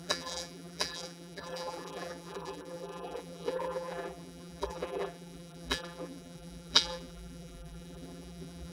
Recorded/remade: remade